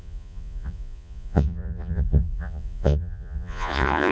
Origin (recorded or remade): remade